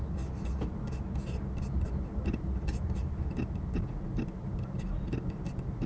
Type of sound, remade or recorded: recorded